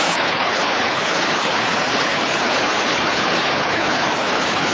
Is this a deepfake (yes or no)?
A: yes